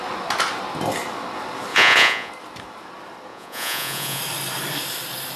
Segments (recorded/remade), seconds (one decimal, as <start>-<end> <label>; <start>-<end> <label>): 0.0-1.7 recorded; 1.7-2.3 remade; 2.3-3.3 recorded; 3.3-4.2 remade; 4.2-5.4 recorded